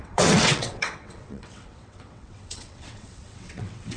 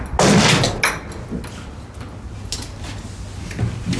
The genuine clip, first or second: second